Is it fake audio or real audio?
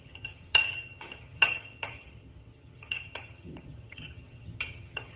fake